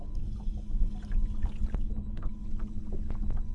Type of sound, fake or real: real